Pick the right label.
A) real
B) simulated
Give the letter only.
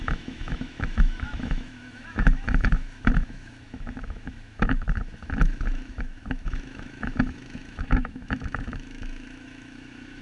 B